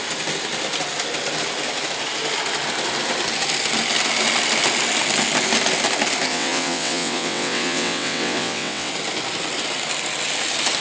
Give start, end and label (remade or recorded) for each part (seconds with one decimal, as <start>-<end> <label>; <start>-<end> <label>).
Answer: 0.0-6.3 recorded; 6.3-8.9 remade; 8.9-10.8 recorded